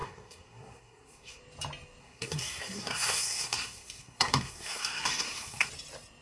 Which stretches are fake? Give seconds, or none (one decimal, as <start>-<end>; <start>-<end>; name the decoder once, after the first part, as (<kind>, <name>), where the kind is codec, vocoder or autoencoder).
0.0-1.4 (codec, SNAC); 2.0-5.7